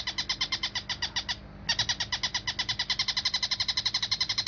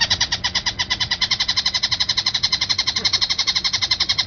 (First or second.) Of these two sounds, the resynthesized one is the second